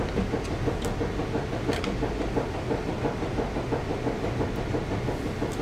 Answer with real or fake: real